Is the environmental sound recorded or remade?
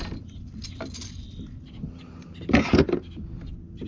recorded